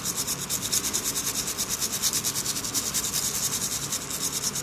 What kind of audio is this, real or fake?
real